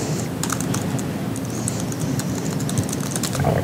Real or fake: real